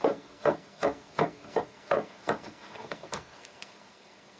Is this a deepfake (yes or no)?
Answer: yes